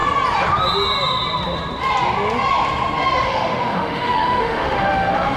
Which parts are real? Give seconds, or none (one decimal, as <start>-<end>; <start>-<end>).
0.0-3.2